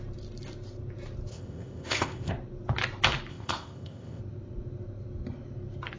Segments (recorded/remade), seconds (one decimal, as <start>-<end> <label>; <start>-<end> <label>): 0.0-1.3 recorded; 1.3-2.3 remade; 2.3-3.3 recorded; 3.3-4.2 remade; 4.2-6.0 recorded